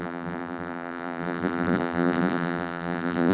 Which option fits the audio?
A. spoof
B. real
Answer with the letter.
A